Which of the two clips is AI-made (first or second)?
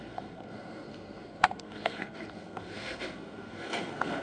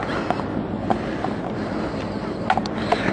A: first